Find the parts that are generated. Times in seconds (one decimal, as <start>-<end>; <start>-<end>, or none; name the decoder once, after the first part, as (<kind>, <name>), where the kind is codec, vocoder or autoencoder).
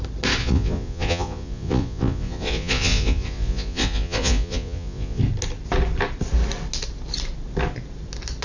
0.4-5.2 (vocoder, Vocos)